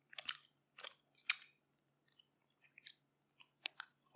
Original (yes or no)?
no